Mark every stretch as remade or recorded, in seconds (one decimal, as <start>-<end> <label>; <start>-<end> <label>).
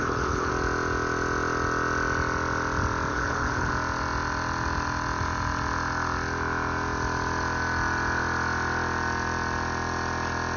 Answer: 0.0-0.5 remade; 0.5-3.1 recorded; 3.1-3.7 remade; 3.7-10.6 recorded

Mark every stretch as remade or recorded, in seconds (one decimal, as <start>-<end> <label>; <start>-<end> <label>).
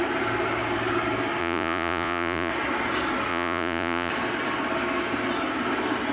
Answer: 0.0-1.4 recorded; 1.4-2.5 remade; 2.5-3.3 recorded; 3.3-4.1 remade; 4.1-6.1 recorded